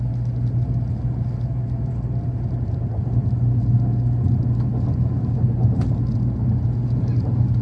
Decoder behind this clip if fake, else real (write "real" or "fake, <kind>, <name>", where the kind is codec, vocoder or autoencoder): real